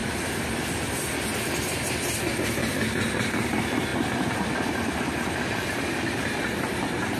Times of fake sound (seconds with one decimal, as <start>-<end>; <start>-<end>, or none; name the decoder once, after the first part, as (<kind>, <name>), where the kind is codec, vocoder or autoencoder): none